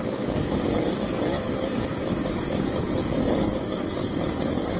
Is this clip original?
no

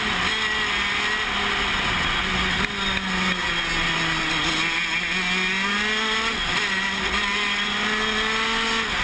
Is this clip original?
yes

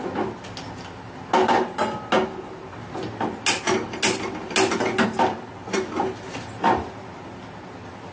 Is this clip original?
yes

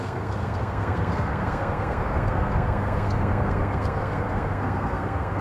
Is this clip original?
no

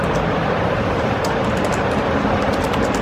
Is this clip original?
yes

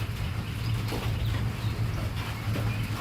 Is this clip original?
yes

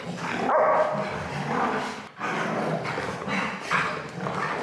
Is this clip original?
yes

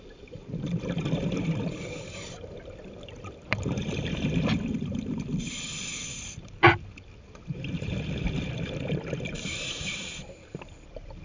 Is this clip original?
no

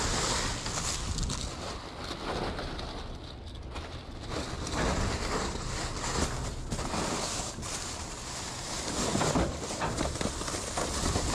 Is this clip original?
yes